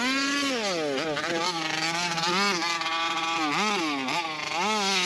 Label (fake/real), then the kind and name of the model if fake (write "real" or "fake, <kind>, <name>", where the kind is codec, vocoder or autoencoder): real